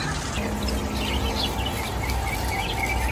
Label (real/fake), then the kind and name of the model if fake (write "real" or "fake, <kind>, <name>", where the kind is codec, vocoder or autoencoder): real